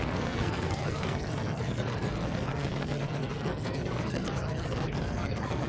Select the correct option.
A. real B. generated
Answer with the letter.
B